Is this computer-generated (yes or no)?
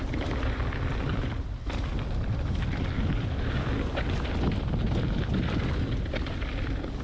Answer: no